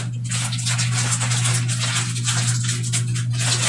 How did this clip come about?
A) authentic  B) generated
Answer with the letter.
A